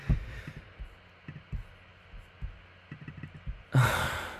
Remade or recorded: recorded